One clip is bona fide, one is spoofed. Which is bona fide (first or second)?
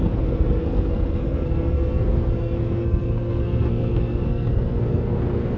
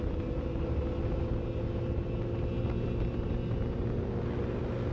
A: second